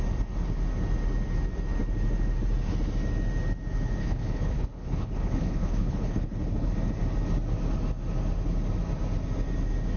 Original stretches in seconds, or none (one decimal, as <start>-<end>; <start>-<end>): 0.0-4.0; 6.7-10.0